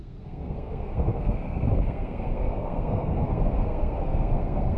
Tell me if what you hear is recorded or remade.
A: remade